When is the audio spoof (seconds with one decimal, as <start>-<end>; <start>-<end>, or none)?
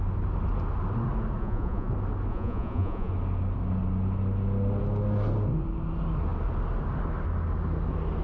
1.4-1.9; 2.3-3.1